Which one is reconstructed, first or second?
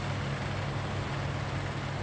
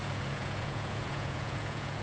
second